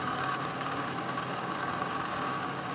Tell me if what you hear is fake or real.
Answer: fake